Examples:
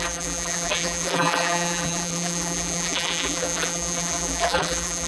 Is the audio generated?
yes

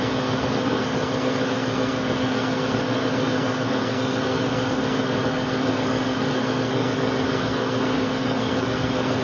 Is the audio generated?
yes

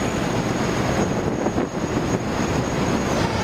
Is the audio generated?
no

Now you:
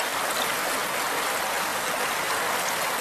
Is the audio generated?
no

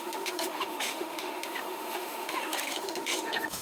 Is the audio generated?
yes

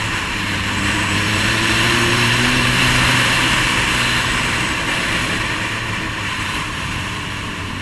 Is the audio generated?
yes